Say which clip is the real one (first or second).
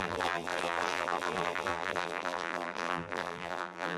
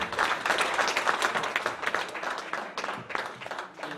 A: second